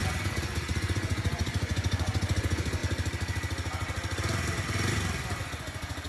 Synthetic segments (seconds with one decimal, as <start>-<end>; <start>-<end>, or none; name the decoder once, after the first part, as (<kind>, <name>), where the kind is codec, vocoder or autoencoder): 0.0-2.8 (vocoder, Vocos); 5.4-6.1